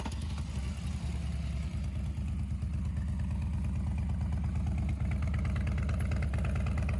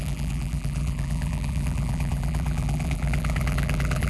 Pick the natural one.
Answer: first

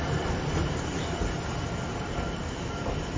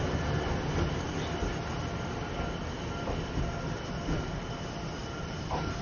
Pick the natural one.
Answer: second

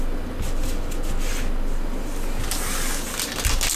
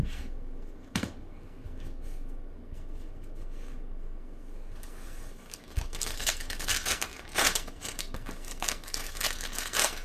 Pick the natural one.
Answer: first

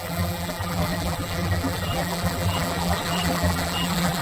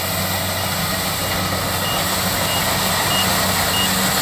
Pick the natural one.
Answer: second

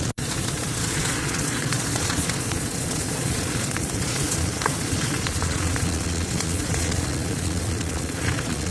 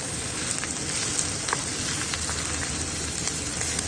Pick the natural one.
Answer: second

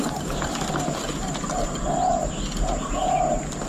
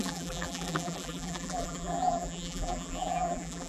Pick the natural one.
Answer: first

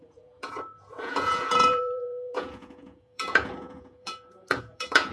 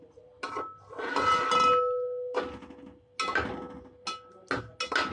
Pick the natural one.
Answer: second